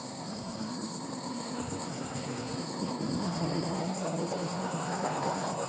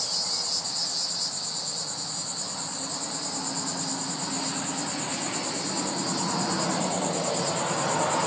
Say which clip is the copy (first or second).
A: first